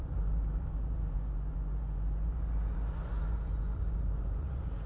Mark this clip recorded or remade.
remade